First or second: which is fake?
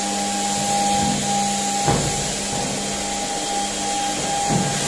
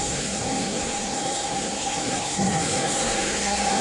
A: second